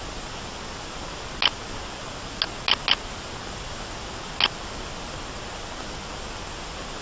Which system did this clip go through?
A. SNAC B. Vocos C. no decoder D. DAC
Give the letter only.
C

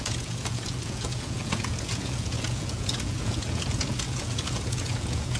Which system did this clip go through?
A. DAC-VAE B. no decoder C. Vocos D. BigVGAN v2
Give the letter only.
C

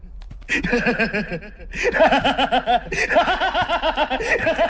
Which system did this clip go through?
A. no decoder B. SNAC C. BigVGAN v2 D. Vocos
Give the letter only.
A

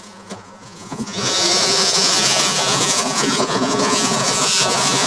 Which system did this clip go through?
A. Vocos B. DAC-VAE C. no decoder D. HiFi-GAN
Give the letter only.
A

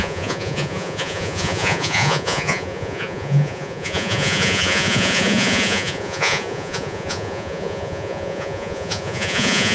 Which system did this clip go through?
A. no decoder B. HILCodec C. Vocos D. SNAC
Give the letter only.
C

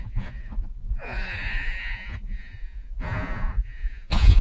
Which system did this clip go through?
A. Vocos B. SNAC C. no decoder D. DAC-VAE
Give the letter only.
A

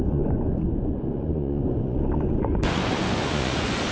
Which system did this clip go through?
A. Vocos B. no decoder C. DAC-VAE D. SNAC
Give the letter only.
A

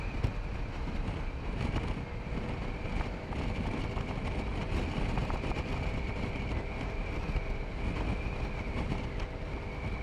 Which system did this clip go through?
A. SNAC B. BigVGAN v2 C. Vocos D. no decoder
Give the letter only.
D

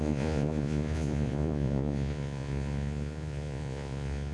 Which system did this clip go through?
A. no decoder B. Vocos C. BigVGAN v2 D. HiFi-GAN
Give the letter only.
B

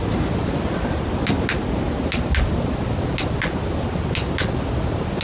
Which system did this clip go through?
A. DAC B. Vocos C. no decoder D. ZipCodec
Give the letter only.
C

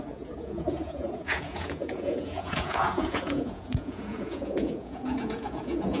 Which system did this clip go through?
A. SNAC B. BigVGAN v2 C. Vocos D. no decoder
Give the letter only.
C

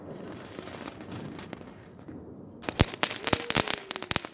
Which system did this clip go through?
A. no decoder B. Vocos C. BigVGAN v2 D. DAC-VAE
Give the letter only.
A